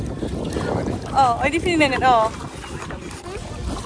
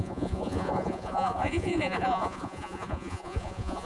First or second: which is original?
first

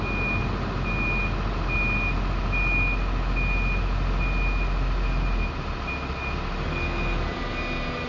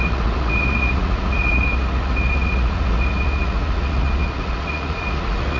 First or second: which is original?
first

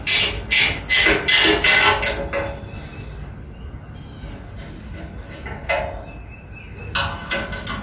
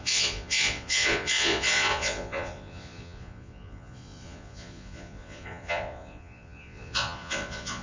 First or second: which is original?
first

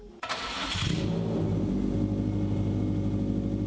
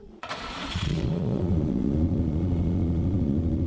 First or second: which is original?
first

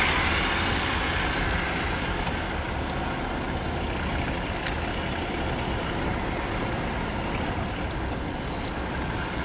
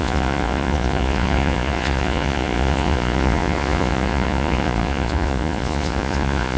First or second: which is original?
first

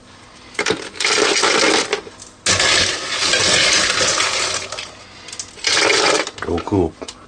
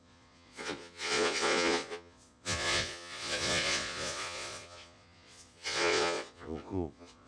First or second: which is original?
first